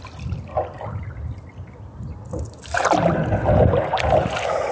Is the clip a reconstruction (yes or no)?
no